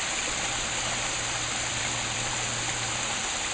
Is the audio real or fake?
fake